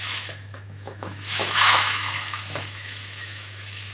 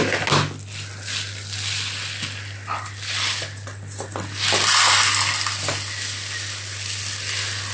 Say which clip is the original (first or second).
second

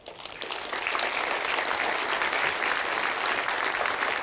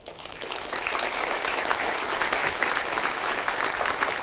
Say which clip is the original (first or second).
first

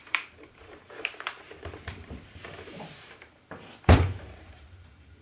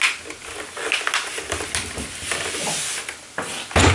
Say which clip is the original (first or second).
second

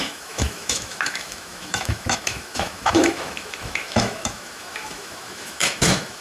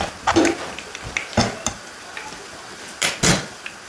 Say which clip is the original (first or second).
second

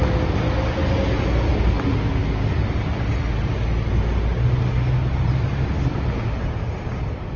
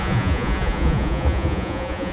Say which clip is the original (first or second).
first